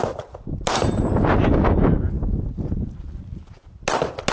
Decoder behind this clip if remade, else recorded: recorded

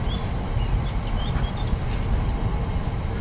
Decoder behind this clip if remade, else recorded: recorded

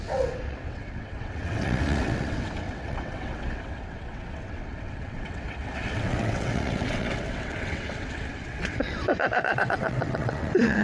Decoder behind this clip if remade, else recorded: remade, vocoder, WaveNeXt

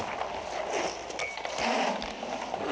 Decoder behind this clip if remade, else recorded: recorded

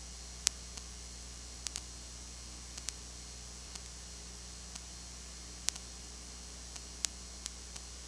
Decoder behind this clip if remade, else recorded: recorded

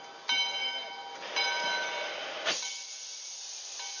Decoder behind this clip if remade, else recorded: recorded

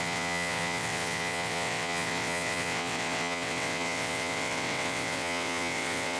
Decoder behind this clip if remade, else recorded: remade, vocoder, WaveNeXt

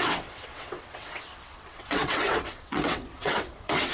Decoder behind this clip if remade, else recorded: remade, vocoder, WaveNeXt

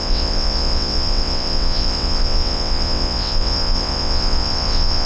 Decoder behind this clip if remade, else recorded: remade, vocoder, WaveNeXt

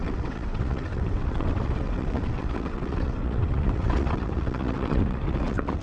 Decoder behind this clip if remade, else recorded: remade, vocoder, WaveNeXt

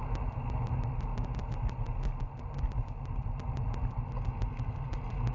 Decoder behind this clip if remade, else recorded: recorded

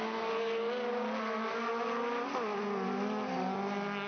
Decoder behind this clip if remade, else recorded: recorded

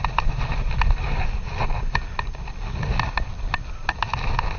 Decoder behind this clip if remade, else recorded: recorded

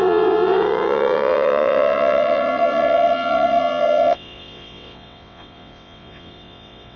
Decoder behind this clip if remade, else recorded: remade, vocoder, WaveNeXt